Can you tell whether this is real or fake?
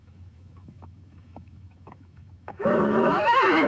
fake